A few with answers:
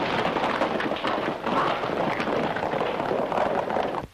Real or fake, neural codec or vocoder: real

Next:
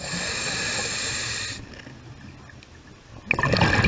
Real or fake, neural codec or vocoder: real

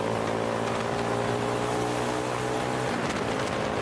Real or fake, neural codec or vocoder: real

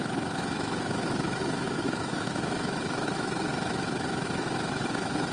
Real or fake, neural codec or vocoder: fake, autoencoder, DAC-VAE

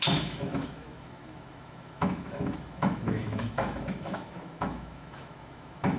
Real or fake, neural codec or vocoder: fake, autoencoder, DAC-VAE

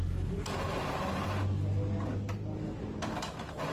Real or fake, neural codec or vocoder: real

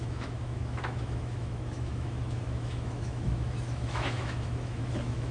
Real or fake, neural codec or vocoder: fake, autoencoder, DAC-VAE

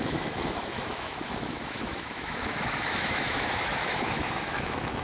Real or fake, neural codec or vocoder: fake, autoencoder, DAC-VAE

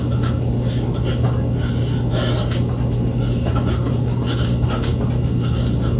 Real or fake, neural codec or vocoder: real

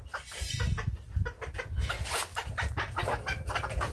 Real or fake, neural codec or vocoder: real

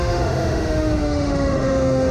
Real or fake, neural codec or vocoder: fake, autoencoder, DAC-VAE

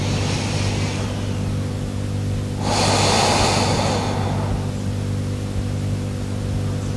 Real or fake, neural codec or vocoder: real